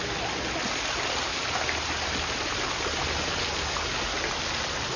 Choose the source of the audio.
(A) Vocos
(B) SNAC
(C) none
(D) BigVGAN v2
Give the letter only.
C